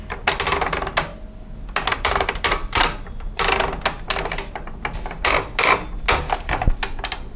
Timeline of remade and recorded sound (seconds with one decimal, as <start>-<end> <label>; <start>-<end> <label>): 0.0-1.9 recorded; 1.9-3.6 remade; 3.6-7.4 recorded

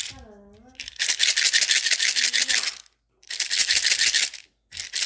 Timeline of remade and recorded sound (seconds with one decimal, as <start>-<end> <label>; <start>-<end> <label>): 0.0-5.1 recorded

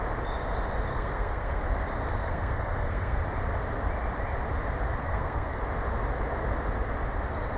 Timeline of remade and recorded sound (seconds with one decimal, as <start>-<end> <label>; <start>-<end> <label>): 0.0-0.9 recorded; 0.9-1.6 remade; 1.6-2.1 recorded; 2.1-3.2 remade; 3.2-5.0 recorded; 5.0-5.6 remade; 5.6-7.6 recorded